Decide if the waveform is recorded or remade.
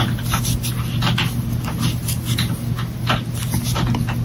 recorded